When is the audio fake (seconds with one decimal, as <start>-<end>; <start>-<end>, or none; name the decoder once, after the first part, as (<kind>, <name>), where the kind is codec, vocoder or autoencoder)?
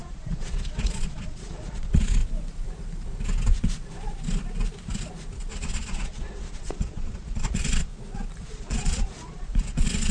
0.0-2.2 (vocoder, Vocos); 5.5-7.9; 8.4-10.1